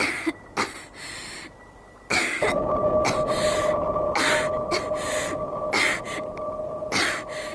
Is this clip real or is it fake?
real